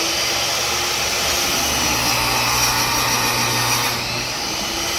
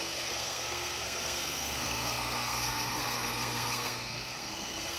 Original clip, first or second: first